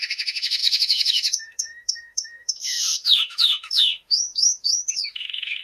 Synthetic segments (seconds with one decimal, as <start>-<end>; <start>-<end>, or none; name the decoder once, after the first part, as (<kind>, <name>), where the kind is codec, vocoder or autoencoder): 0.0-5.6 (autoencoder, DAC-VAE)